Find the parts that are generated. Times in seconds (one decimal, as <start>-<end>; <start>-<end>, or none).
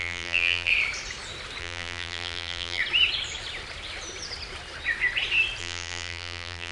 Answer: 0.0-0.7; 1.6-2.8; 5.6-6.7